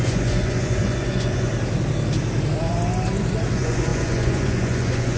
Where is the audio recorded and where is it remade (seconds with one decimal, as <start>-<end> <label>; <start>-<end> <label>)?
0.0-1.5 remade; 1.5-3.5 recorded; 3.5-5.2 remade